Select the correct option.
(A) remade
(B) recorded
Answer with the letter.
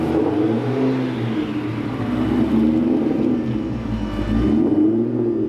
B